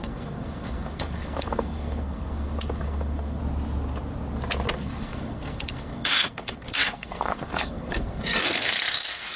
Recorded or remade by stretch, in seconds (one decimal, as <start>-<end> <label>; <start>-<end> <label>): 0.0-3.4 remade; 3.4-4.7 recorded; 4.7-9.4 remade